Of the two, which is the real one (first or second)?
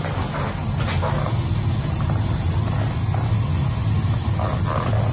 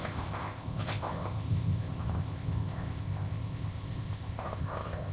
first